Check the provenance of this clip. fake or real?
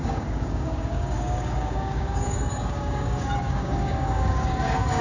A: fake